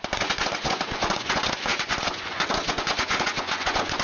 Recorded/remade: remade